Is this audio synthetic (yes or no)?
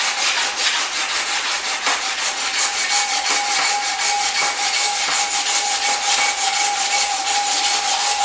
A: no